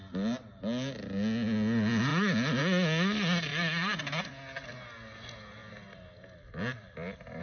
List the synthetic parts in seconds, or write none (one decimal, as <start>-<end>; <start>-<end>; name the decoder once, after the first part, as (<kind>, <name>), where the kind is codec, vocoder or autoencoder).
3.5-4.2 (vocoder, BigVGAN v2); 5.6-7.4